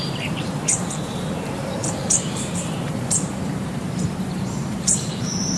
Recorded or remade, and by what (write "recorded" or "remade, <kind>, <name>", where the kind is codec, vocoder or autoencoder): remade, vocoder, BigVGAN v2